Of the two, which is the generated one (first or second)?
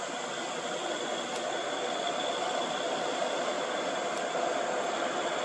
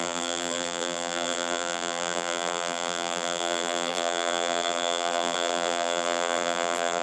second